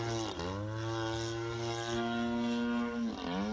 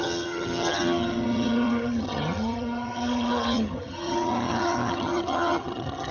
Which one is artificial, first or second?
second